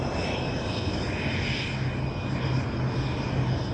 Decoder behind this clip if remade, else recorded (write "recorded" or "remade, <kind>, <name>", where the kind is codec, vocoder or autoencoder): recorded